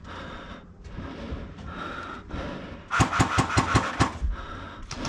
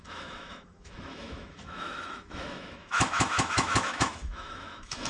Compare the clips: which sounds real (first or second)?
first